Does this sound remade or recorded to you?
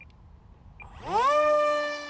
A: recorded